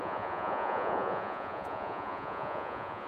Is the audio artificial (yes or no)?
yes